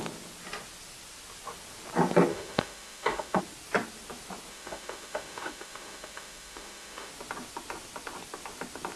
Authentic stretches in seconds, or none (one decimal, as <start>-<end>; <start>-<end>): 0.0-2.3; 3.4-4.5; 7.1-9.0